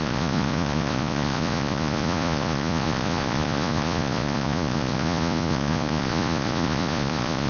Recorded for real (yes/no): no